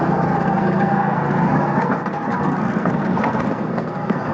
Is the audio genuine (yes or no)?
no